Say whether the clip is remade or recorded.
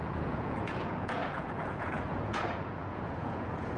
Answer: remade